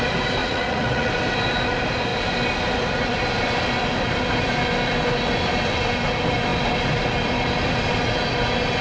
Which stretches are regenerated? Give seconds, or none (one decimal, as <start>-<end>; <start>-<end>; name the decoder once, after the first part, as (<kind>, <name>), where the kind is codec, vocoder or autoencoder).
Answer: 0.4-1.1 (vocoder, Vocos)